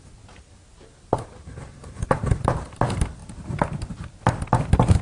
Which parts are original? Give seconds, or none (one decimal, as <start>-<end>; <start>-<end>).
0.0-1.8; 2.8-5.0